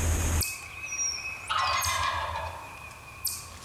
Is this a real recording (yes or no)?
yes